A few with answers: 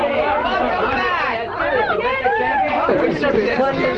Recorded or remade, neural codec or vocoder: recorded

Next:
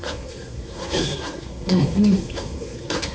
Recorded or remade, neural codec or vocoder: remade, codec, SNAC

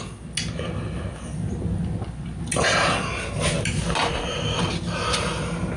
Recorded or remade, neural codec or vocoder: recorded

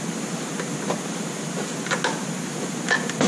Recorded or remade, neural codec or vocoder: recorded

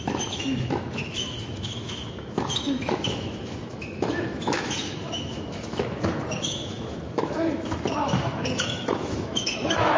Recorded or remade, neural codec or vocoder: remade, autoencoder, DAC-VAE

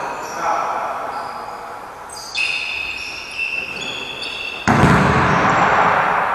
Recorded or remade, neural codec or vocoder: recorded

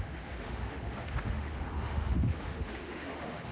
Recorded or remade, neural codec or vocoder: remade, autoencoder, DAC-VAE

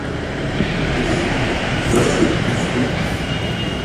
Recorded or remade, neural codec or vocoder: remade, vocoder, BigVGAN v2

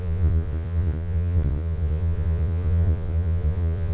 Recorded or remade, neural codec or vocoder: remade, vocoder, Vocos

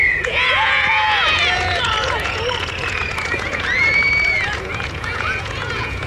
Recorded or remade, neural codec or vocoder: remade, vocoder, Vocos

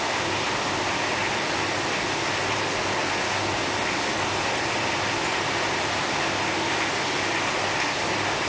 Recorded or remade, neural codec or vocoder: recorded